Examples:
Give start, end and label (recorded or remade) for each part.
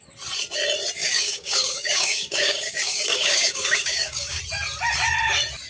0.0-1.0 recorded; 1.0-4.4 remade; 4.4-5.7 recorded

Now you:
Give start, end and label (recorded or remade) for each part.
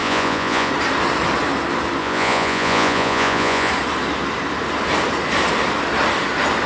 0.0-0.7 remade; 0.7-2.0 recorded; 2.0-3.7 remade; 3.7-6.7 recorded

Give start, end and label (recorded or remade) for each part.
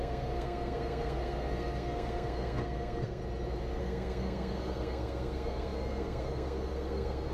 0.0-3.2 remade; 3.2-3.8 recorded; 3.8-7.3 remade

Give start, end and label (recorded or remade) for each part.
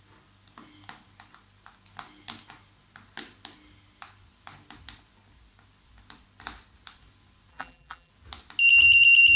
0.0-7.5 recorded; 7.5-8.1 remade; 8.1-9.4 recorded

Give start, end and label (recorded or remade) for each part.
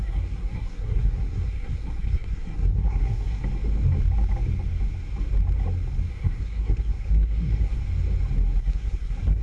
0.0-3.4 remade; 3.4-6.1 recorded; 6.1-7.8 remade; 7.8-8.6 recorded; 8.6-9.4 remade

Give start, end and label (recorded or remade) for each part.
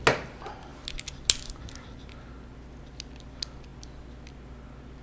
0.0-5.0 recorded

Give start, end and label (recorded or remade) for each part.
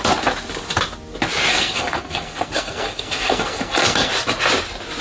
0.0-1.5 recorded; 1.5-4.1 remade; 4.1-5.0 recorded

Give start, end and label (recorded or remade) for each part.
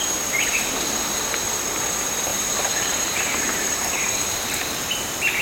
0.0-2.3 recorded; 2.3-4.7 remade; 4.7-5.4 recorded